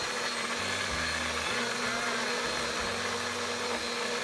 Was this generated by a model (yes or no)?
no